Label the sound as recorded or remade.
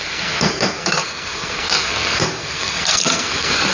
remade